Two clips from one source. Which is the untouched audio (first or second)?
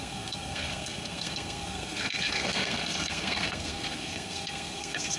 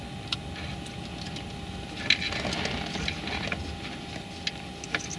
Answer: second